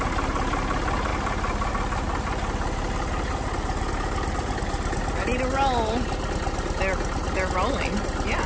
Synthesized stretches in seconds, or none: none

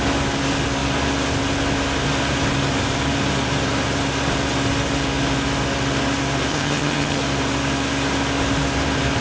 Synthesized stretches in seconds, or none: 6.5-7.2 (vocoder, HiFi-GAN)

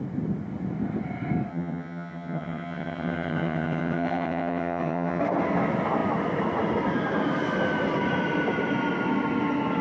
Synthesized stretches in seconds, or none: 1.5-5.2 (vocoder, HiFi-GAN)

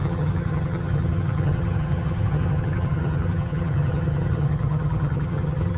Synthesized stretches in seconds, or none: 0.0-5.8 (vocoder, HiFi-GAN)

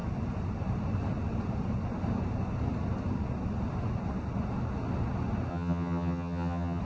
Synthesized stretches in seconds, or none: 5.5-6.8 (vocoder, HiFi-GAN)

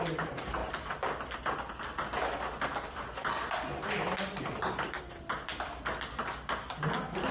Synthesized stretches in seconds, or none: none

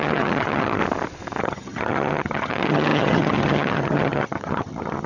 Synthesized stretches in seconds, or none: 0.0-0.8 (vocoder, HiFi-GAN); 1.4-5.1